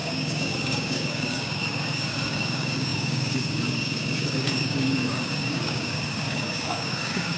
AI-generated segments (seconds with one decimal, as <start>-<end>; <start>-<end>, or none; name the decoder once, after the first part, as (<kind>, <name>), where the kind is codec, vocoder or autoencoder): 0.0-7.4 (codec, DAC)